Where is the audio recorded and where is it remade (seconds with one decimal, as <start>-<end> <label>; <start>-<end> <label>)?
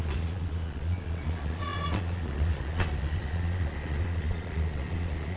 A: 0.0-5.4 remade